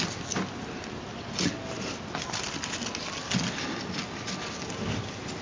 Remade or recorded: recorded